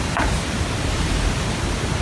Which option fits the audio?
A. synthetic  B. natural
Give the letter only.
A